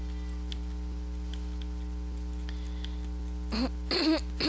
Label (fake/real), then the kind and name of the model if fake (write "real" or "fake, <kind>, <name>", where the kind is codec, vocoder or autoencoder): real